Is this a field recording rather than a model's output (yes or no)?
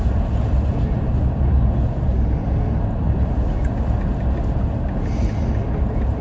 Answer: yes